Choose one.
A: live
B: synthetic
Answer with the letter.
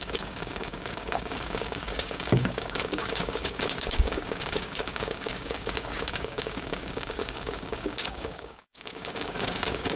B